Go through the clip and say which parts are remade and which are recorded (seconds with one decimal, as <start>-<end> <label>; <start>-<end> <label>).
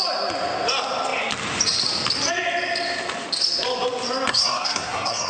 0.0-4.3 recorded; 4.3-5.3 remade